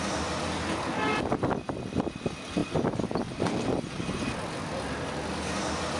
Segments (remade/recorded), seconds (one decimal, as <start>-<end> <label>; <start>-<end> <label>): 0.0-6.0 recorded